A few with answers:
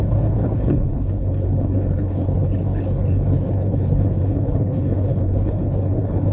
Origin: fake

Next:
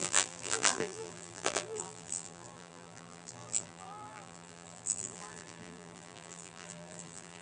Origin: fake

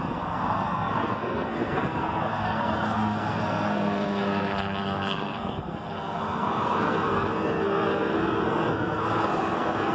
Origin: fake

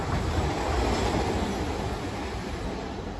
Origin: real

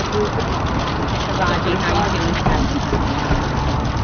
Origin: real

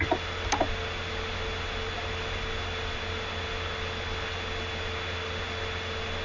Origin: real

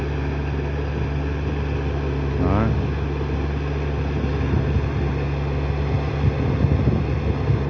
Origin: real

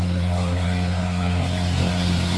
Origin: fake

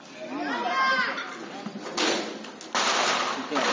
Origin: real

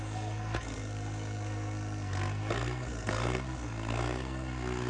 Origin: fake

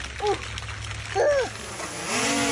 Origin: real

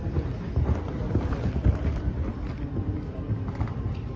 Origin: real